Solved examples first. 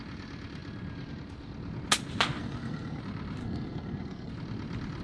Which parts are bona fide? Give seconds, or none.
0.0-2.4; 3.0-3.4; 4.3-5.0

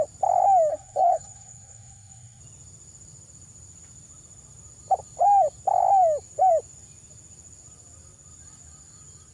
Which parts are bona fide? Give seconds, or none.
0.0-0.7; 2.4-9.3

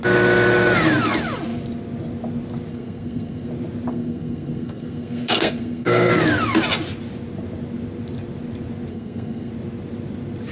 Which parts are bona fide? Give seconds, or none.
0.0-2.7; 3.5-3.9; 6.1-8.9; 9.5-10.5

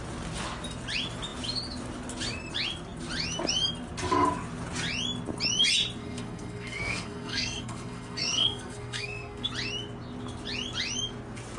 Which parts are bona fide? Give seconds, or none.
0.0-6.0; 9.5-11.6

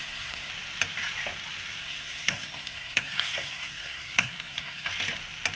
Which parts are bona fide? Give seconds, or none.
0.5-1.8; 4.9-5.6

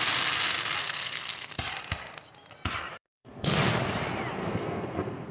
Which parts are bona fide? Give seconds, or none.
0.0-0.8; 1.5-2.9; 3.6-4.4

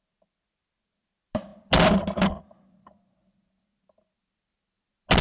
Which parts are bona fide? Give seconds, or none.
0.0-5.2

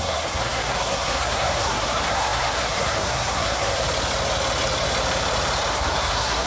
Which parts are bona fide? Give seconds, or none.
3.8-5.7